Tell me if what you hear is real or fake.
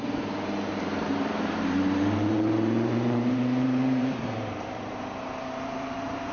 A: fake